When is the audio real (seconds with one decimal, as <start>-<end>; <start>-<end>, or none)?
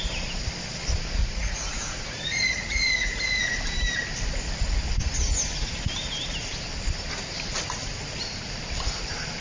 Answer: 0.0-1.2; 3.4-9.4